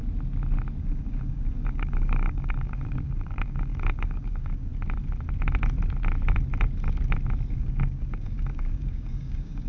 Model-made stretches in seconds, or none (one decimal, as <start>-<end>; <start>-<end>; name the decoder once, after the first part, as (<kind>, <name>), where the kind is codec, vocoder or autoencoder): 0.8-4.7 (codec, DAC); 7.5-9.7